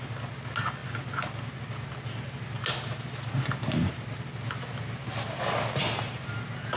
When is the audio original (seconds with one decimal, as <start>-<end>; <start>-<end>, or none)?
0.0-6.8